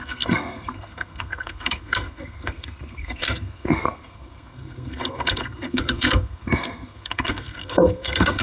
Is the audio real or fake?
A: fake